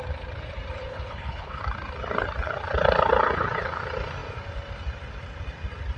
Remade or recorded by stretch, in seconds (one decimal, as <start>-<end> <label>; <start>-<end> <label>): 0.0-0.9 recorded; 0.9-1.6 remade; 1.6-6.0 recorded